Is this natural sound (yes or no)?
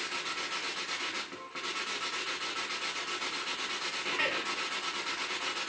yes